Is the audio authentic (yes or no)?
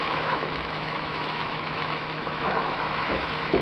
no